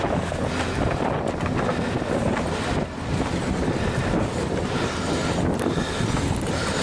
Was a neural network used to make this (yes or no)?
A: no